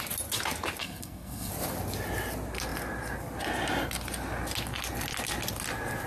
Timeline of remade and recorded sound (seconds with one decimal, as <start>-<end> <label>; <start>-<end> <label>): 0.0-0.8 recorded; 0.8-1.5 remade; 1.5-6.1 recorded